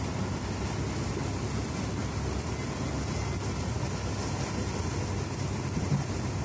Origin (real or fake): real